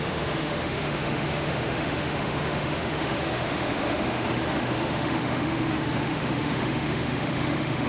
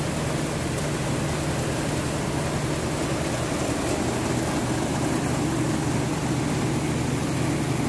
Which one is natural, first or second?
second